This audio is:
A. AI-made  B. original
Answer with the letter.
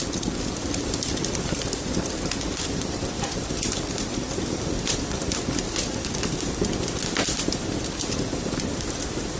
B